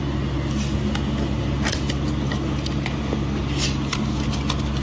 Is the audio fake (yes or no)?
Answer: no